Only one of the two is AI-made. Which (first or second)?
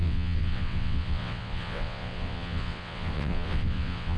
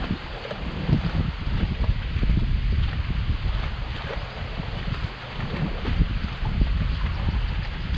first